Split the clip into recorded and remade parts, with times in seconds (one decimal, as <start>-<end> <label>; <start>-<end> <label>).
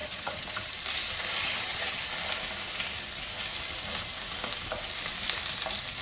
0.0-0.7 remade; 0.7-1.4 recorded; 1.4-2.0 remade; 2.0-6.0 recorded